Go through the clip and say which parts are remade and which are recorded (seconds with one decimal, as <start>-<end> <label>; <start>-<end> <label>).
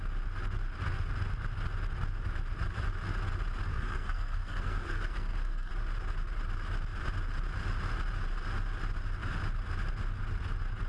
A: 0.0-3.7 recorded; 3.7-5.7 remade; 5.7-10.9 recorded